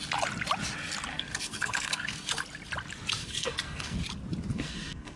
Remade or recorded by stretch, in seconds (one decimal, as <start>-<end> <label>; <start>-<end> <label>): 0.0-1.1 recorded; 1.1-2.3 remade; 2.3-3.2 recorded; 3.2-4.0 remade; 4.0-4.5 recorded; 4.5-5.2 remade